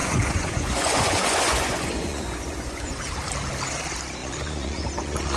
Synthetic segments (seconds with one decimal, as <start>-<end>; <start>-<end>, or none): 0.0-3.0; 4.2-5.4